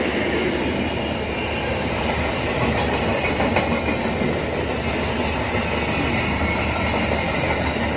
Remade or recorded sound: recorded